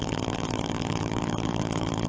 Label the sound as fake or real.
fake